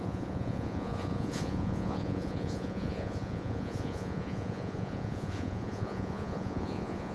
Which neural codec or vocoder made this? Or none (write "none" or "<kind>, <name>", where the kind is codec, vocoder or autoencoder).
vocoder, Vocos